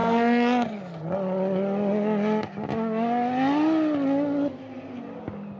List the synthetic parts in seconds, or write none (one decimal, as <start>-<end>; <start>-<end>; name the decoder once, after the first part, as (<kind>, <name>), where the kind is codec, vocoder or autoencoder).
none